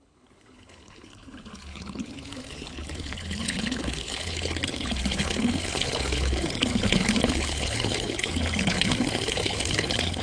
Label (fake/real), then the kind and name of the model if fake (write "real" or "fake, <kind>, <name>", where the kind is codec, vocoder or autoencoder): fake, codec, HILCodec